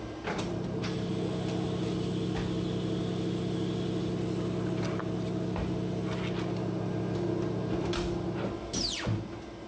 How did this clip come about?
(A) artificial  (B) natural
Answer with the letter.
B